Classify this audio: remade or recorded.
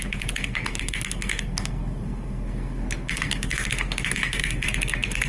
remade